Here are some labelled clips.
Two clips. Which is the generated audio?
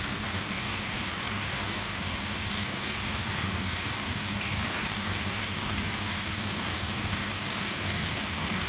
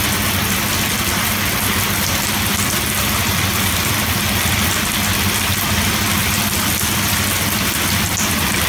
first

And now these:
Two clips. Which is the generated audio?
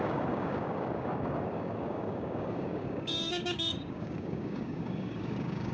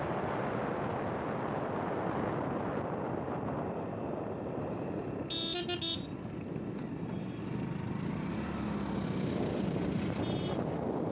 first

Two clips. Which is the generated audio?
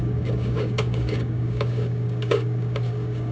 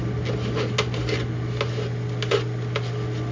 first